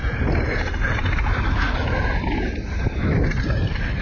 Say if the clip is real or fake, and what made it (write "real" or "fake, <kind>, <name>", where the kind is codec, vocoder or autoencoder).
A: real